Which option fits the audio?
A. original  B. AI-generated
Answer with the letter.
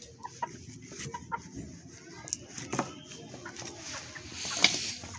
A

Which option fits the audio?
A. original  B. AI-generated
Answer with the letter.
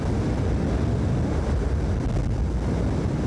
A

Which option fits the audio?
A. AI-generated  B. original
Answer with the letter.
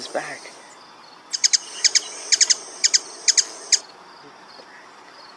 B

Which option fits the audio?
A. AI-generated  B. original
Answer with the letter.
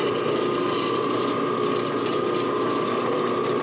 B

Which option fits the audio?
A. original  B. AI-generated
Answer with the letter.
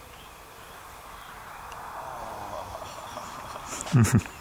A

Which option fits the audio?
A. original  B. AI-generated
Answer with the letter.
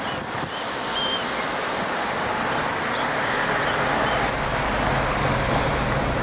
A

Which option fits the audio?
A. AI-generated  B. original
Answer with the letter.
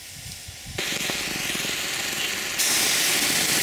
B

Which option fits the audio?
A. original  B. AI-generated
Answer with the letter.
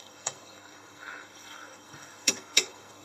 B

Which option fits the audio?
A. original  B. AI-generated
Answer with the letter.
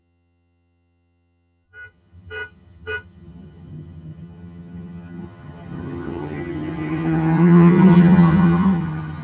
B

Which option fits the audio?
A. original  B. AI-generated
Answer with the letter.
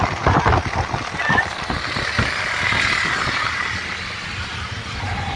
A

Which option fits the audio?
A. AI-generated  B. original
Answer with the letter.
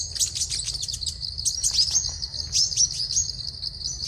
B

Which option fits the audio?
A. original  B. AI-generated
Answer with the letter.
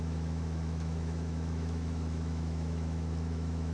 B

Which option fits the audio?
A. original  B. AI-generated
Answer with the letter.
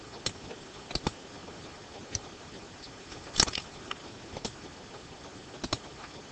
A